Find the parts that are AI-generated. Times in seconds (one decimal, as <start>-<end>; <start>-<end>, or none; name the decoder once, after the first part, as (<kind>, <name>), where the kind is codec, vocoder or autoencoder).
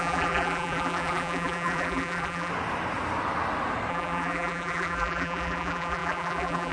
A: 0.0-2.5 (vocoder, BigVGAN v2); 3.9-6.7